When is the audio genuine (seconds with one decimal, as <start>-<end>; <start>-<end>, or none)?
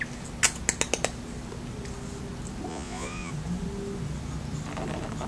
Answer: 0.0-2.7; 3.3-5.3